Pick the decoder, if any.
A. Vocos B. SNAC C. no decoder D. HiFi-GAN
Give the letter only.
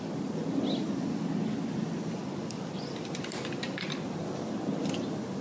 C